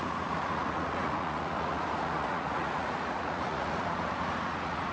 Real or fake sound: fake